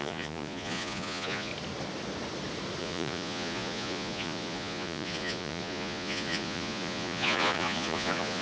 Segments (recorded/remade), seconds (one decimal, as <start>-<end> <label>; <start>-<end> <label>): 0.0-1.5 remade; 1.5-2.8 recorded; 2.8-8.4 remade